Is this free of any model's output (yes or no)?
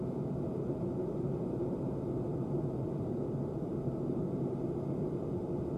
yes